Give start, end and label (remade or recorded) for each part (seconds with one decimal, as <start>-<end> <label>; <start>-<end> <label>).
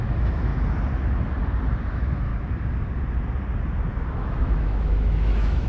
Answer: 0.0-0.5 remade; 0.5-1.9 recorded; 1.9-2.3 remade; 2.3-4.1 recorded; 4.1-5.7 remade